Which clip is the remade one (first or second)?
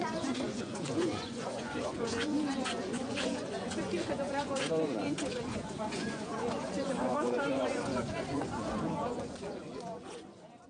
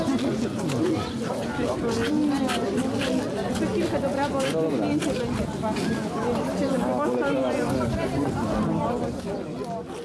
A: first